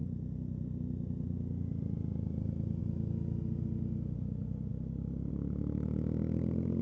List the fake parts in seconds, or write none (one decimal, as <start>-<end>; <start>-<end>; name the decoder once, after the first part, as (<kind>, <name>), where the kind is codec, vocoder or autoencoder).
none